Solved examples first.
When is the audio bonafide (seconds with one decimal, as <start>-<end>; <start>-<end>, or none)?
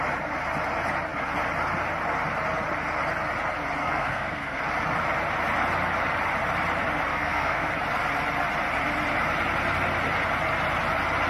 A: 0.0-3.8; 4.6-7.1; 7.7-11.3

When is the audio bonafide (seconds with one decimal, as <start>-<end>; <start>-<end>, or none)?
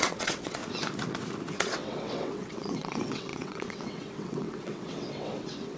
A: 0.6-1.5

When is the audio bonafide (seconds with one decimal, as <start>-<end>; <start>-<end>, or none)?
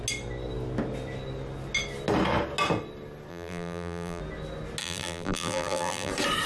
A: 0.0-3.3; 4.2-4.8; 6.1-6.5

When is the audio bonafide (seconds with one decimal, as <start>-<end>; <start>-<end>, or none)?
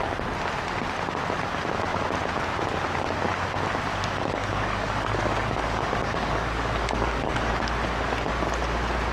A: 0.0-3.9; 7.5-9.1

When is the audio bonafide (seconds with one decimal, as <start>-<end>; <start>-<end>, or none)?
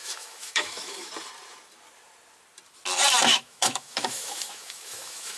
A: 1.1-3.3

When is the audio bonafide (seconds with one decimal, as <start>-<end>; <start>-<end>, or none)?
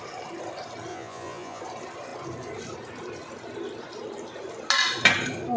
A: 0.0-0.9; 1.6-5.6